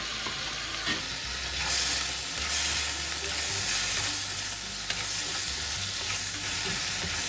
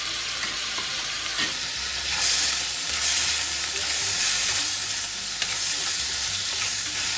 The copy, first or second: second